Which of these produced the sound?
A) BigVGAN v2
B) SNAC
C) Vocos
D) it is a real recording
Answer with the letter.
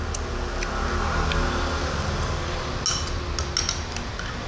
D